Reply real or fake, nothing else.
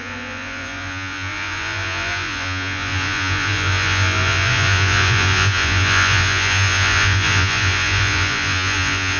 fake